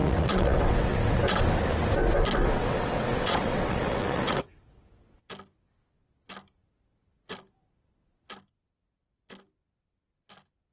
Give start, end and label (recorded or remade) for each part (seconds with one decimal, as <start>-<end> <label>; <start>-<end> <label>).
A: 0.0-1.4 remade; 1.4-2.4 recorded; 2.4-5.3 remade; 5.3-10.7 recorded